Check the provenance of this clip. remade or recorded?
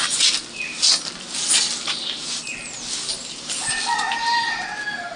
recorded